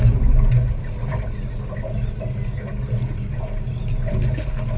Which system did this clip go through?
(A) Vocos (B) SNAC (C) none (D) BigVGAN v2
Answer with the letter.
C